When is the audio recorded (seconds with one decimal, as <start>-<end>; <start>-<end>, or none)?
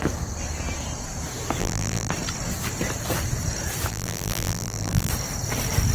0.0-1.6; 2.1-3.9; 5.1-5.9